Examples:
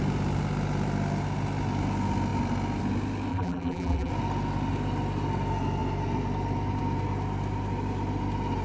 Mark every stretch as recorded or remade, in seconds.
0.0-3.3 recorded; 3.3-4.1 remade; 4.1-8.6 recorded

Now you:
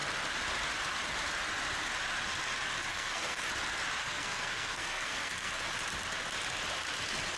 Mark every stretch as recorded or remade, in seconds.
0.0-2.9 recorded; 2.9-3.4 remade; 3.4-4.0 recorded; 4.0-5.5 remade; 5.5-7.4 recorded